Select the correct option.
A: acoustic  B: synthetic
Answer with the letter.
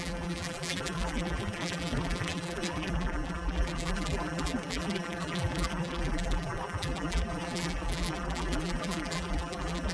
B